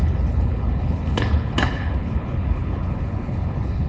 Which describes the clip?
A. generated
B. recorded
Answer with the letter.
A